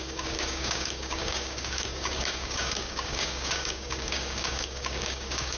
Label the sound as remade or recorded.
remade